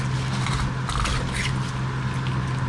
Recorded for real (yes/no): yes